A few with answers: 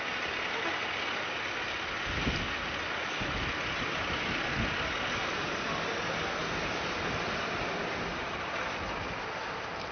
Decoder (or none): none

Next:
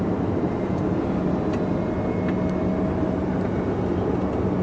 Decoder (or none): none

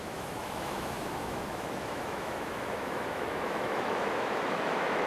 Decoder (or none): autoencoder, DAC-VAE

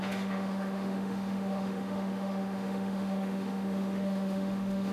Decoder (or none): autoencoder, DAC-VAE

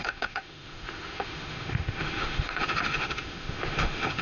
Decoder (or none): autoencoder, DAC-VAE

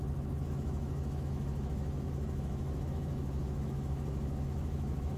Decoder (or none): autoencoder, DAC-VAE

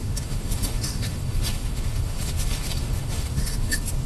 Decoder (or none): autoencoder, DAC-VAE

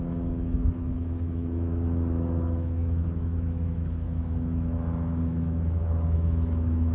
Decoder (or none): autoencoder, DAC-VAE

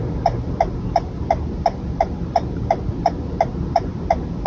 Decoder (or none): none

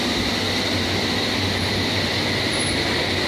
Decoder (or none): none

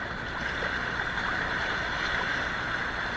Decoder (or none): none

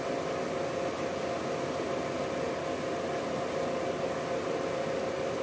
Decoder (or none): none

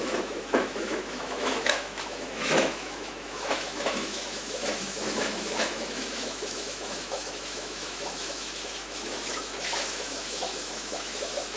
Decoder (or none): autoencoder, DAC-VAE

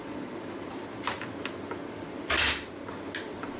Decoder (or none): none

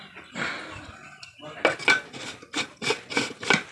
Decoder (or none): none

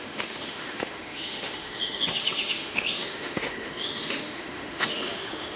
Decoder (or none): autoencoder, DAC-VAE